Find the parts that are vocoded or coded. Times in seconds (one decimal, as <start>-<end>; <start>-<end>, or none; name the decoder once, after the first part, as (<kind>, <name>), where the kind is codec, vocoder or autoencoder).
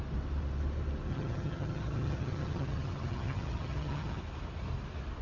1.1-4.2 (vocoder, HiFi-GAN)